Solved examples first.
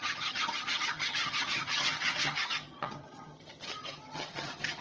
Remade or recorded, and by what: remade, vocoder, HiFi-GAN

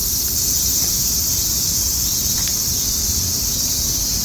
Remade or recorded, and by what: remade, vocoder, BigVGAN v2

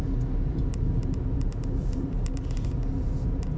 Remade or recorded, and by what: recorded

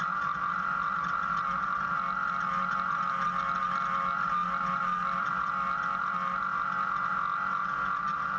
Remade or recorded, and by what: recorded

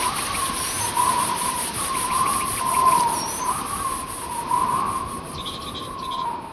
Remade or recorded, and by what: remade, vocoder, BigVGAN v2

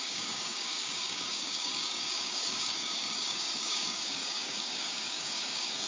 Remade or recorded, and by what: remade, codec, DAC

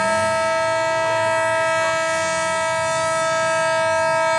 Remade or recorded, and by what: recorded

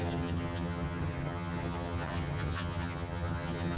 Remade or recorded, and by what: remade, vocoder, HiFi-GAN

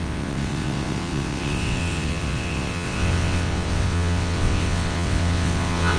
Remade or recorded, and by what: remade, vocoder, WaveNeXt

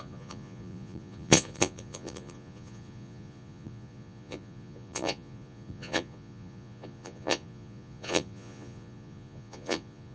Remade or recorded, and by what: remade, vocoder, Vocos